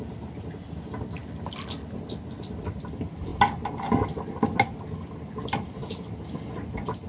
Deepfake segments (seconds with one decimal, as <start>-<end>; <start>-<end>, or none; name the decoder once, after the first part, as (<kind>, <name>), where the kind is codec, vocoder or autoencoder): none